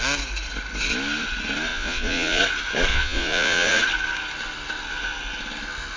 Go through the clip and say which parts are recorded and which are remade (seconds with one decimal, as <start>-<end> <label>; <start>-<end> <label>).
0.0-1.7 recorded; 1.7-2.4 remade; 2.4-2.9 recorded; 2.9-3.8 remade; 3.8-6.0 recorded